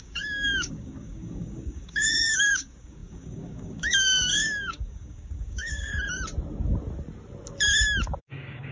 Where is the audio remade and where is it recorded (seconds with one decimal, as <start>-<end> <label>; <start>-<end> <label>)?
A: 0.0-5.9 remade; 5.9-8.2 recorded; 8.2-8.7 remade